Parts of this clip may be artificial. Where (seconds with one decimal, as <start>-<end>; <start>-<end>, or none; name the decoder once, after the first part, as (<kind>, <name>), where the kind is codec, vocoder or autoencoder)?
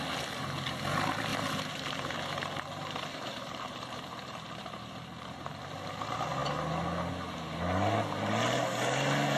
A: 1.3-5.6 (vocoder, BigVGAN v2)